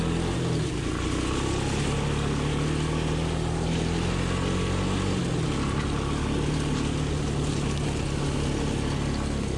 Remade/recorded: recorded